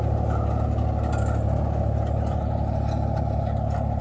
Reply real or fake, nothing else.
real